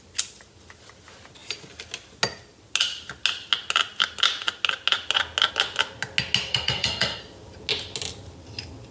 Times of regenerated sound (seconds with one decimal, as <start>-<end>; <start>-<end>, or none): 6.5-7.2